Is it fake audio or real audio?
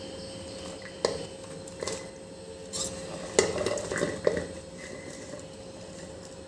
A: real